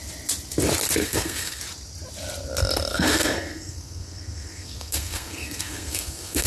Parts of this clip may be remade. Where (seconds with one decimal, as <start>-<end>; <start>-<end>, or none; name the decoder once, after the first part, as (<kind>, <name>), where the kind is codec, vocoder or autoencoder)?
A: 1.0-1.6 (codec, SNAC); 2.9-6.5